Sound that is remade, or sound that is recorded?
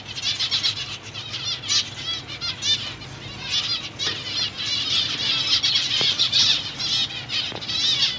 recorded